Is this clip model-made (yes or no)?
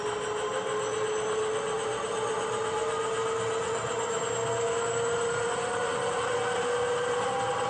no